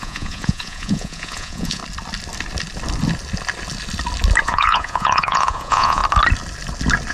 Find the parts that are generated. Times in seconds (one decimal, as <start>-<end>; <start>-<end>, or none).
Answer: 0.0-1.8; 4.4-6.0